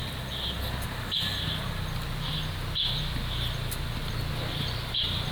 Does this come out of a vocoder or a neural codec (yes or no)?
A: no